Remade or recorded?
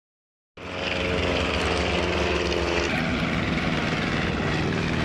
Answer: recorded